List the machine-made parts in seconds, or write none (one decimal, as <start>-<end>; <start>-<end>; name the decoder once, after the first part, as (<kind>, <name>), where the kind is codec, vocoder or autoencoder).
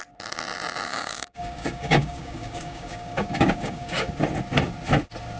0.9-4.1 (codec, DAC)